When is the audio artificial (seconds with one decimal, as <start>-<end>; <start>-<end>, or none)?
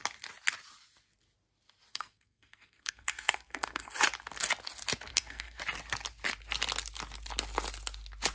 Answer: 1.9-3.9; 5.1-5.6